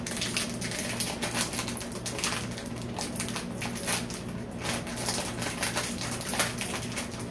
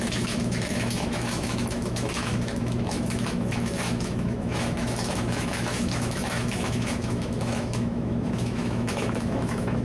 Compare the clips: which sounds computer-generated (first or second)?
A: second